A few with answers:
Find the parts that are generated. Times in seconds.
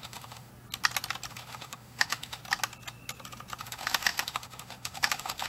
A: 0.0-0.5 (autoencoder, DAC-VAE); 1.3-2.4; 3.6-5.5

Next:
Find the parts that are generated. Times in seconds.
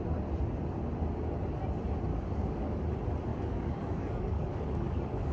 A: 2.1-2.8 (codec, DAC); 3.3-5.3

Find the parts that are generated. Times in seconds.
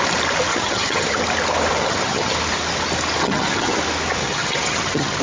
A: 0.5-1.2 (vocoder, HiFi-GAN); 1.8-2.3; 3.2-3.8; 4.2-5.2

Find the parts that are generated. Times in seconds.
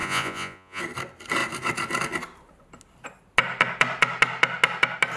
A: 0.0-0.8 (vocoder, Vocos)